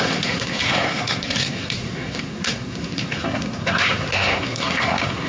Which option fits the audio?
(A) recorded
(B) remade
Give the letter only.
B